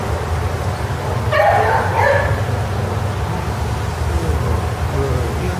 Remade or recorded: recorded